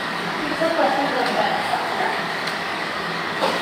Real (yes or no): no